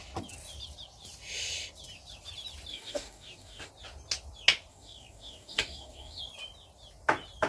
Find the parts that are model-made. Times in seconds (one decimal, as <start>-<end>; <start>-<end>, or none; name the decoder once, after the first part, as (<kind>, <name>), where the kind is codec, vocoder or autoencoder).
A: 2.7-3.7 (codec, DAC); 4.7-6.2